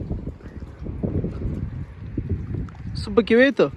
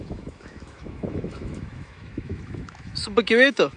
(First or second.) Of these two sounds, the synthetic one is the second